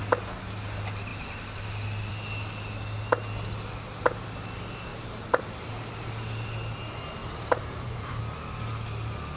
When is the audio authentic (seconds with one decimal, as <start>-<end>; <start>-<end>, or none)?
0.0-4.9; 5.7-7.2; 8.2-9.4